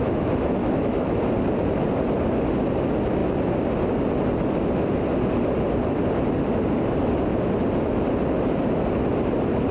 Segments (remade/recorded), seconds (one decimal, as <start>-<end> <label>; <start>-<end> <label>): 0.0-0.6 recorded; 0.6-1.2 remade; 1.2-9.7 recorded